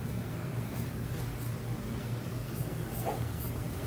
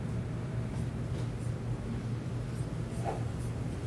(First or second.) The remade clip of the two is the first